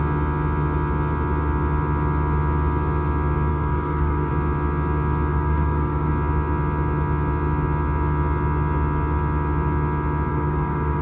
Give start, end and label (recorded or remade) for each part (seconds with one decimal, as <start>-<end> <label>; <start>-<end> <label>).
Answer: 0.0-3.5 recorded; 3.5-4.3 remade; 4.3-5.3 recorded; 5.3-6.1 remade; 6.1-10.3 recorded; 10.3-11.0 remade